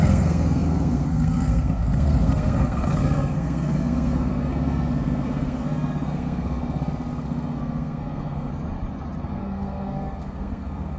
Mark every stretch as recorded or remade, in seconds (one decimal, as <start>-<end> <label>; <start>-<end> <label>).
0.0-8.5 remade; 8.5-9.2 recorded; 9.2-11.0 remade